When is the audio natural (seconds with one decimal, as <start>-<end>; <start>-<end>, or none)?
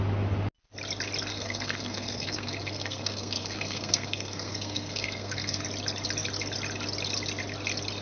0.0-1.3; 5.6-8.0